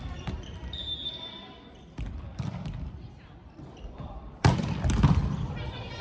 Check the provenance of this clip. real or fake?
fake